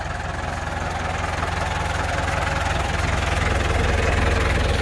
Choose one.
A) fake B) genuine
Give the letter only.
B